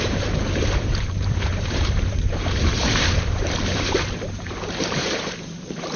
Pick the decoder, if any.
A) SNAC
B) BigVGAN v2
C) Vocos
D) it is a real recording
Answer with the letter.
B